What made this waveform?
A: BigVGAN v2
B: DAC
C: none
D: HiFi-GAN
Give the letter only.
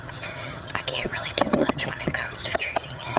D